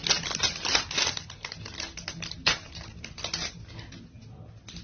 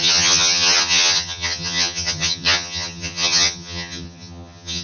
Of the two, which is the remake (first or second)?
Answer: second